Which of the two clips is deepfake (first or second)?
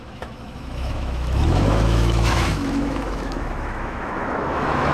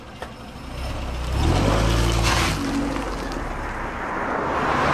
first